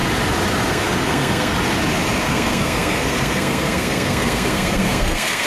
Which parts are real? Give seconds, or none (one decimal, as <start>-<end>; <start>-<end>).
0.0-0.7; 1.5-2.2